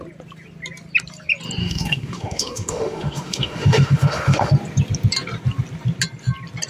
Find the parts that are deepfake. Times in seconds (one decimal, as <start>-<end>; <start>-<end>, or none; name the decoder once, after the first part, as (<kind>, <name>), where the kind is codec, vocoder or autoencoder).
1.6-4.5 (autoencoder, DAC-VAE)